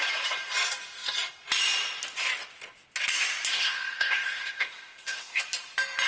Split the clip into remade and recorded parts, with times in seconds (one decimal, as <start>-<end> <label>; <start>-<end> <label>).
0.0-3.5 recorded; 3.5-5.4 remade; 5.4-6.1 recorded